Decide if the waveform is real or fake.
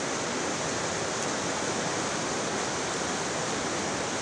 real